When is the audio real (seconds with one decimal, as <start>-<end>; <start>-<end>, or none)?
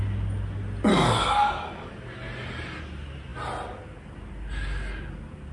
0.0-0.9; 1.9-5.5